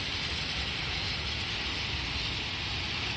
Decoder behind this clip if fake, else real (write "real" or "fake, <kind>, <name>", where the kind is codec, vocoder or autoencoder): real